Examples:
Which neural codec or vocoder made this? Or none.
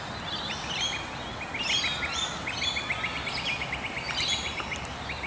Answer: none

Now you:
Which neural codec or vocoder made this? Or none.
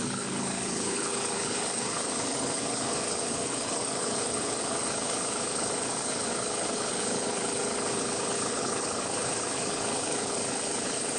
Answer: codec, HILCodec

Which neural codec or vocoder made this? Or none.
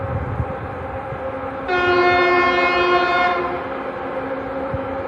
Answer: none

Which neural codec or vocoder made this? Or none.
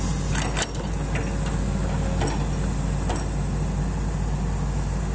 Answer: none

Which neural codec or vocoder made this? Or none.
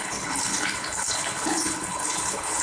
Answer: codec, HILCodec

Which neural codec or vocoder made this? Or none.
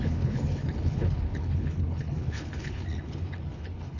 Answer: codec, HILCodec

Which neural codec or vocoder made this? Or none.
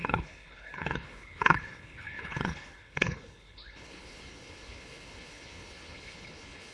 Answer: codec, HILCodec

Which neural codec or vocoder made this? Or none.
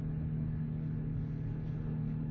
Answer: codec, HILCodec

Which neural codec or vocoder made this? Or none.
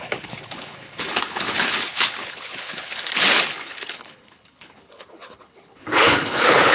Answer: codec, HILCodec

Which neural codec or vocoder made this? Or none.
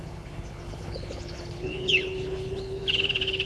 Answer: codec, HILCodec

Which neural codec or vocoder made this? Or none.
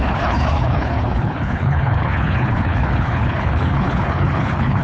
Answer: codec, HILCodec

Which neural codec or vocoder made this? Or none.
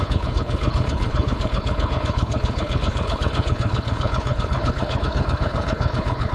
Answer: codec, HILCodec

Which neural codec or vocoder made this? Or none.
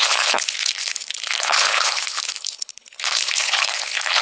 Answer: codec, HILCodec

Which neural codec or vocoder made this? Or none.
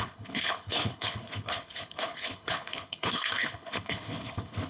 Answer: codec, HILCodec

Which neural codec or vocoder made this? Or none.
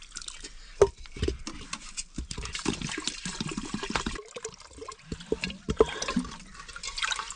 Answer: none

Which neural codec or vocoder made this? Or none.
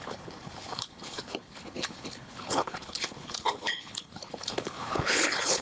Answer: codec, HILCodec